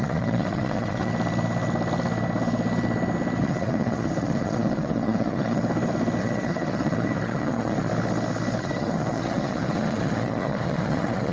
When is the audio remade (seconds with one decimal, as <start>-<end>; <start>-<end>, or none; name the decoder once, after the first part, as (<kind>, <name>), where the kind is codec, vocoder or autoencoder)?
0.0-1.1 (vocoder, Vocos); 3.4-5.6; 6.2-7.9; 8.6-11.3